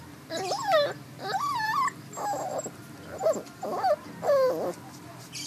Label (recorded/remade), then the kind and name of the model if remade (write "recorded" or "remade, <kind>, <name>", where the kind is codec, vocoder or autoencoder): recorded